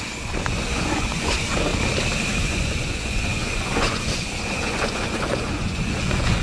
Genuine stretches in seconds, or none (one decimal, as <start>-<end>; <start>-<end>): 1.7-2.4

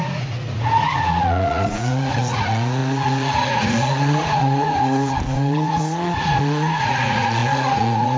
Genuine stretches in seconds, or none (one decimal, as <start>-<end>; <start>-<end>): none

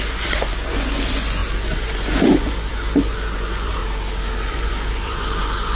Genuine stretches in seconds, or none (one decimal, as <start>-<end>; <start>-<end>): 3.8-4.5

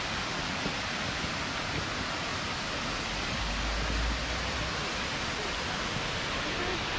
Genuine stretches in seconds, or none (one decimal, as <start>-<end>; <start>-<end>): 0.0-7.0